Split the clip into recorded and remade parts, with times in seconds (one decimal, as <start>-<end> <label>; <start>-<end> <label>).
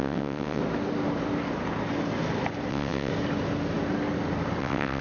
0.0-0.6 remade; 0.6-2.7 recorded; 2.7-3.1 remade; 3.1-4.6 recorded; 4.6-5.0 remade